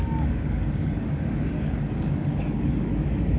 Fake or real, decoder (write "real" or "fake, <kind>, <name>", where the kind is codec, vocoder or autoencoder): fake, codec, DAC